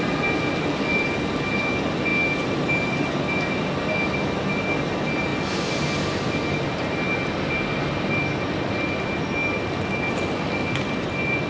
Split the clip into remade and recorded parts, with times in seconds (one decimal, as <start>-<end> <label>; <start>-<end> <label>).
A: 0.0-11.5 recorded